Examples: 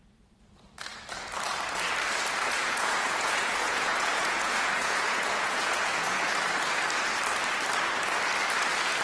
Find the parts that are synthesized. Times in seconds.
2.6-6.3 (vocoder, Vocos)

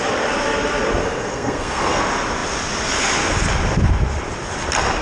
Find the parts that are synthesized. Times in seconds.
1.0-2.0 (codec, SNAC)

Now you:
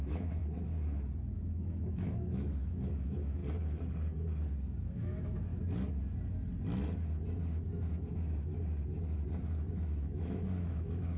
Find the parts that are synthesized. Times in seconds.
0.0-0.4 (autoencoder, DAC-VAE); 1.3-3.4; 4.8-5.5; 9.7-11.2

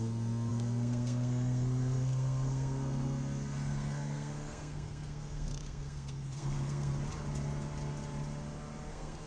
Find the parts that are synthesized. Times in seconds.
0.0-6.9 (codec, SNAC); 8.9-9.3

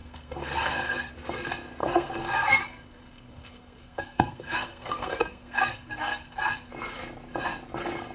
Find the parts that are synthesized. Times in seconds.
0.0-1.1 (codec, SNAC); 1.8-6.7

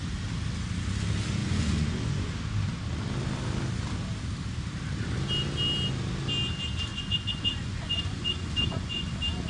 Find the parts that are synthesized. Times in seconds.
1.4-2.3 (vocoder, Vocos); 6.9-9.1

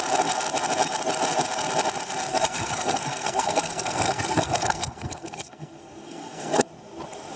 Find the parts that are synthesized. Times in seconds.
2.3-6.7 (codec, SNAC)